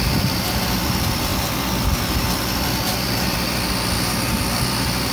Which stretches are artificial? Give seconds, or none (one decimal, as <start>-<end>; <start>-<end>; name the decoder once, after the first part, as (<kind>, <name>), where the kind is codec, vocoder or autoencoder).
0.0-1.3 (vocoder, BigVGAN v2); 4.4-5.1